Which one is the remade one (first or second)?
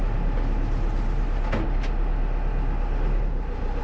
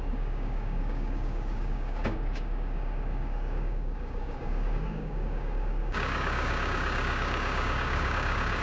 second